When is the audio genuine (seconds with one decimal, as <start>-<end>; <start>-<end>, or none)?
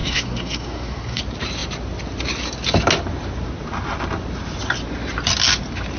1.2-6.0